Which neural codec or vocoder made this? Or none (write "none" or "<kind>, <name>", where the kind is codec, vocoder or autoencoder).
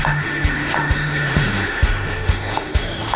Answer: autoencoder, DAC-VAE